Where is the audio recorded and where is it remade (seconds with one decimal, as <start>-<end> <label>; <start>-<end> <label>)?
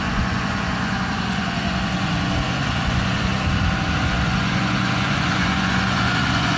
0.0-3.3 remade; 3.3-4.0 recorded; 4.0-6.6 remade